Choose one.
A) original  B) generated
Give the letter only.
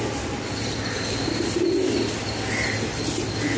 A